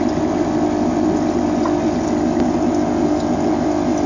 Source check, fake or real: real